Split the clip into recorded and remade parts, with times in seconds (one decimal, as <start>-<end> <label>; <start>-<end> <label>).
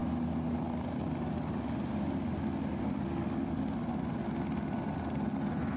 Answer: 0.0-5.8 recorded